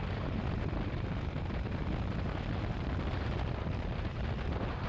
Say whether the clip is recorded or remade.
recorded